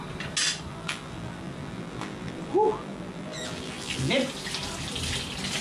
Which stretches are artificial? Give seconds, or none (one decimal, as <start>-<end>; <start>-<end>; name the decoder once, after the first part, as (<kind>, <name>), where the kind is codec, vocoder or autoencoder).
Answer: 0.7-4.1 (vocoder, BigVGAN v2)